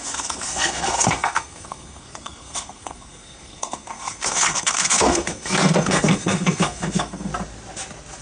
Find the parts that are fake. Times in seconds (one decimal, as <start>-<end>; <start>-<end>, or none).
0.0-7.3